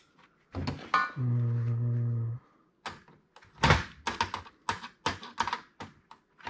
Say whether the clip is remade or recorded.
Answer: recorded